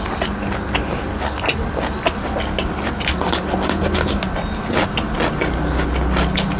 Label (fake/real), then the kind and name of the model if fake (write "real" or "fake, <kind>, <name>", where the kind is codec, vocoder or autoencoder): real